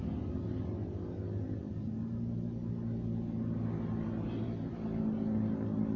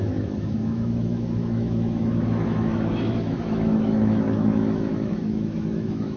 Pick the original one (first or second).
first